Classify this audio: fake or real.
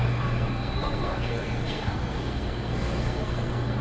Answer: fake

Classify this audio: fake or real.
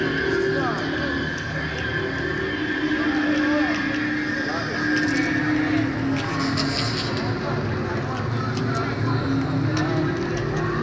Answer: real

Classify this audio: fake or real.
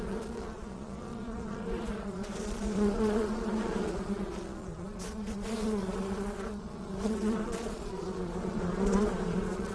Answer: fake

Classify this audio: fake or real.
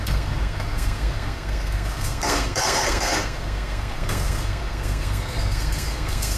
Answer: fake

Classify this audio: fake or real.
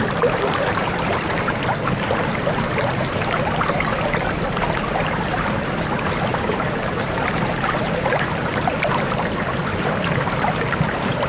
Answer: fake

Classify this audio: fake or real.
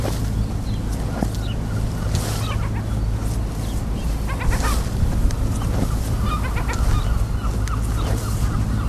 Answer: real